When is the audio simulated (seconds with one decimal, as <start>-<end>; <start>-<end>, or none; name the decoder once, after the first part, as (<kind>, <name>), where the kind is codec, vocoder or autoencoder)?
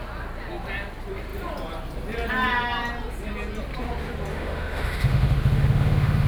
4.3-6.3 (autoencoder, DAC-VAE)